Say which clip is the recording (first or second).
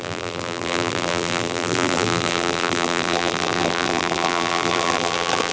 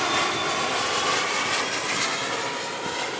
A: second